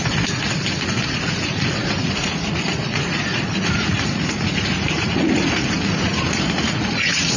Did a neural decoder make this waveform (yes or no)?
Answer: yes